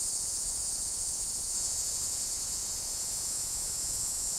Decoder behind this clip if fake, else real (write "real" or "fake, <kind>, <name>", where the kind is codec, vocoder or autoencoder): fake, vocoder, Vocos